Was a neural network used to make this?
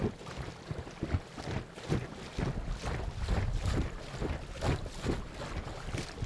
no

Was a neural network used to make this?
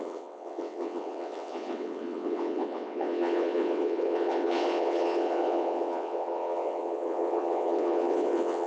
yes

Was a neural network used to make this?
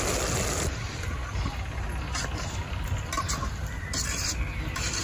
no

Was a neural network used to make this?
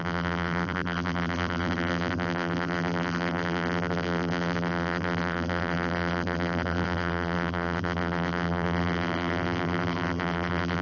yes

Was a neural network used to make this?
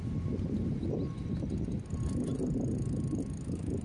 no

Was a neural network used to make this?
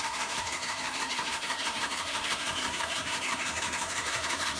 yes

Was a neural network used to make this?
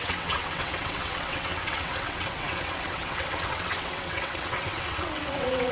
yes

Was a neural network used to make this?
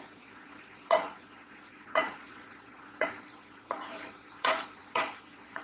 yes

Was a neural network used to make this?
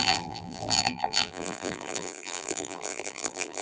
yes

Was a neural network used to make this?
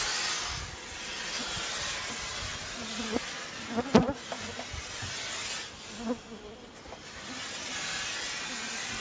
no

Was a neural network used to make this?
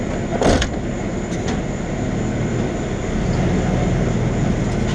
no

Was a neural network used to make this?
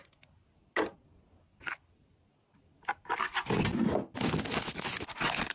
no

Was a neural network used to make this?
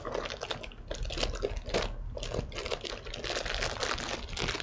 no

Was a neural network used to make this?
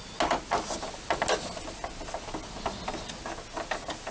no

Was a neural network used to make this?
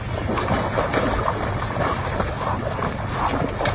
no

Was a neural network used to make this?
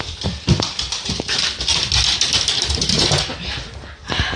no